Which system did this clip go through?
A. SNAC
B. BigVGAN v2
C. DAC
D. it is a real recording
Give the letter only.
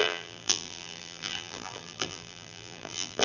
B